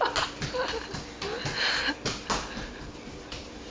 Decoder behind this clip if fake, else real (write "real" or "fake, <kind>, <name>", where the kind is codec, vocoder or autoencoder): real